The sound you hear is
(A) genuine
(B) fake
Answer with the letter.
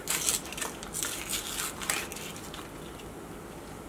A